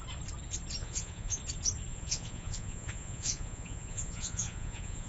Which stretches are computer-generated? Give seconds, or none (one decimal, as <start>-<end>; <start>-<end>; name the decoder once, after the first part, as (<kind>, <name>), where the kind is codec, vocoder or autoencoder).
0.8-1.4 (vocoder, Vocos); 1.9-5.1